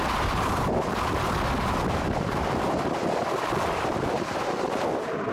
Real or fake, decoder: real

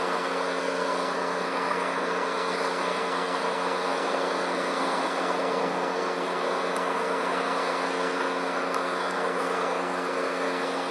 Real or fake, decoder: fake, codec, SNAC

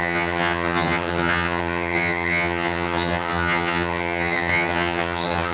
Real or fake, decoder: fake, vocoder, HiFi-GAN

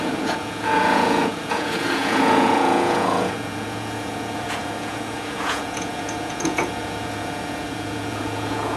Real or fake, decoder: fake, vocoder, Vocos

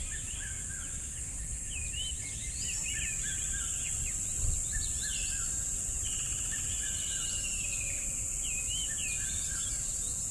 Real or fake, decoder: real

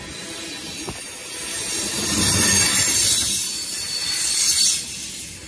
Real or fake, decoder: real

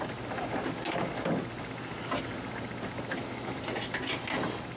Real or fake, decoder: real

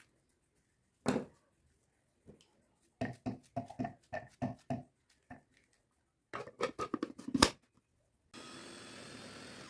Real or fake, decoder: real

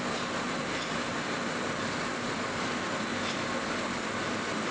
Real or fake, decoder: real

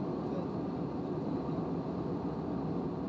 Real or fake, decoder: real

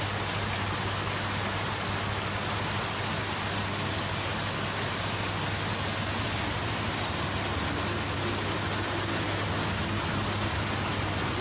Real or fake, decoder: real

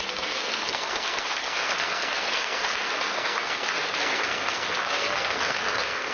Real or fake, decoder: fake, codec, SNAC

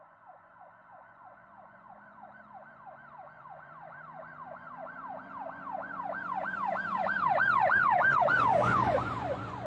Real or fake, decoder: fake, vocoder, Vocos